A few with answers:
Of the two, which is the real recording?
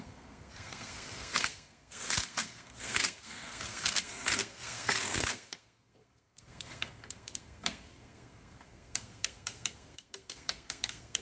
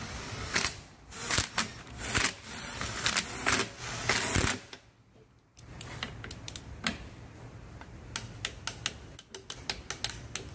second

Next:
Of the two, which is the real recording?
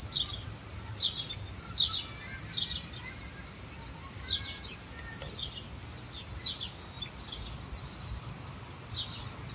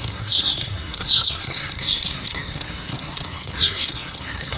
first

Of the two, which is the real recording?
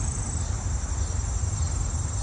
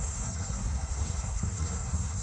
first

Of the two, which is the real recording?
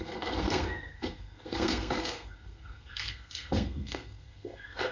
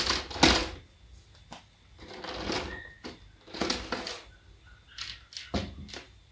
second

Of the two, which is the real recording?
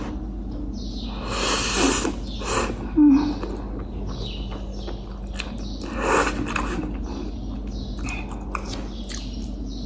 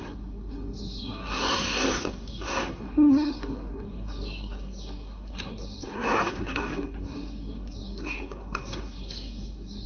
first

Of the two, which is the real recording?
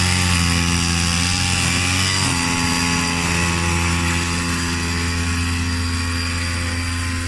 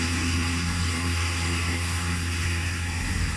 first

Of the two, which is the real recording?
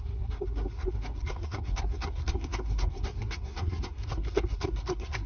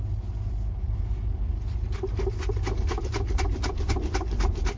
second